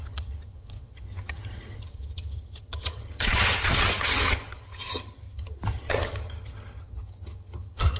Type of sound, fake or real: fake